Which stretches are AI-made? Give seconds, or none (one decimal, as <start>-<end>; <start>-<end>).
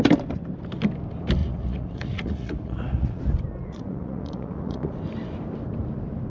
1.4-3.2; 3.6-4.9